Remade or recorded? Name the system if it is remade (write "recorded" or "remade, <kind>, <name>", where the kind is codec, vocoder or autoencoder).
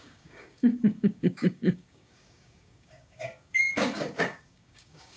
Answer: remade, codec, DAC